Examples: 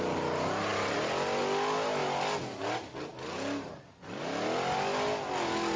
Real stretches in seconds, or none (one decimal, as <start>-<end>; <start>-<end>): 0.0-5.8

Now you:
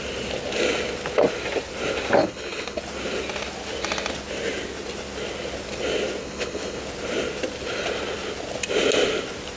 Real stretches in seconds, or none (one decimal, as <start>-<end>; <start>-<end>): 0.0-2.2; 2.8-6.2; 6.8-9.6

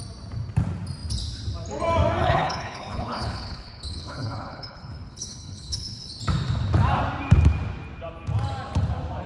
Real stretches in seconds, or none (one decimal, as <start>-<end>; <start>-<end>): 0.0-2.2; 6.1-9.3

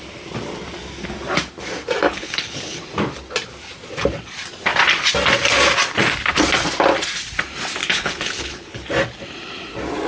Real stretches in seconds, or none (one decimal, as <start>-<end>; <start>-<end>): 0.0-2.1; 2.8-7.8; 8.9-10.1

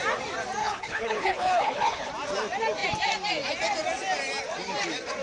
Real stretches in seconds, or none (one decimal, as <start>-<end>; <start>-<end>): 0.0-0.6; 2.1-5.2